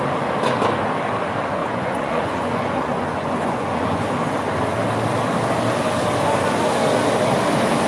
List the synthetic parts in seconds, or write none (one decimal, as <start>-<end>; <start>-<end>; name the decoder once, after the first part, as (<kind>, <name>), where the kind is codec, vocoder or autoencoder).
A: 1.6-4.1 (vocoder, Vocos)